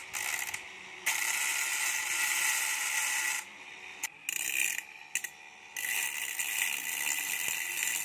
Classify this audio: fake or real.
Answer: real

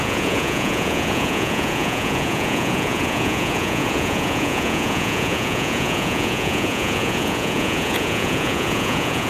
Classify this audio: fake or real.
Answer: fake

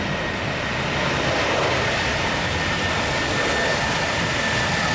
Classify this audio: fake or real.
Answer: real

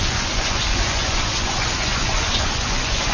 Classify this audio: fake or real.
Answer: fake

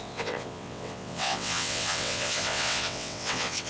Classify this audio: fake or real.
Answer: fake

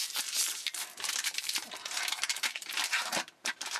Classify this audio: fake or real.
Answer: fake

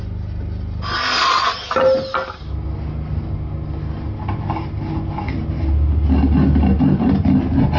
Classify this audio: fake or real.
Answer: real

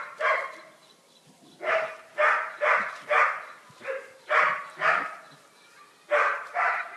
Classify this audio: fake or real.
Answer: real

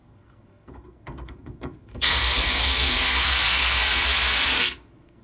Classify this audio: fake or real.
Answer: fake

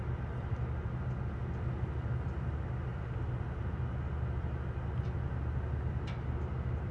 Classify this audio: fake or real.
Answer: real